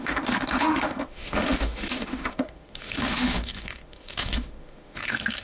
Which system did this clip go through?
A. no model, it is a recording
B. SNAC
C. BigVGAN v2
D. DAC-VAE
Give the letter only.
D